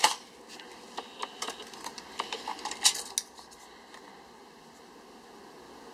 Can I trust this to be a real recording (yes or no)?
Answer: yes